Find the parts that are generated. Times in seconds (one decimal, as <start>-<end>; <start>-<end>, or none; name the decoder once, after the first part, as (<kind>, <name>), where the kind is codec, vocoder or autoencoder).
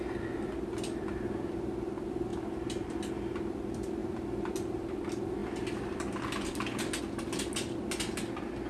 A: none